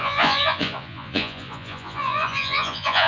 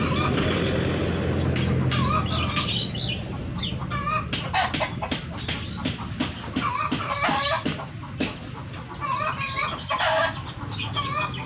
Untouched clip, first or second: second